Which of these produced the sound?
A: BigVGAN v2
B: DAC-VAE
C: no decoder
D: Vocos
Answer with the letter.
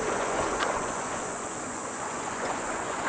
D